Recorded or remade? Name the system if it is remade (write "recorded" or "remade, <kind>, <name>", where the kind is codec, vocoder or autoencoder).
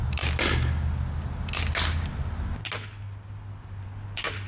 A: recorded